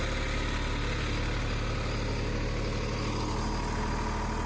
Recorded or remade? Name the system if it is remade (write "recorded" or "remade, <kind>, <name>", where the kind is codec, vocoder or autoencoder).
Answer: recorded